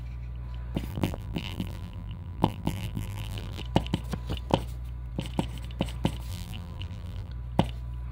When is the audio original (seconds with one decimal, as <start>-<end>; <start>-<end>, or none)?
0.0-0.9; 3.6-6.3; 7.3-8.1